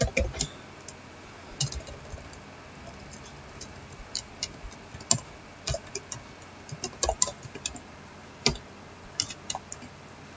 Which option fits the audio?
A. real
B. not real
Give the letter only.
A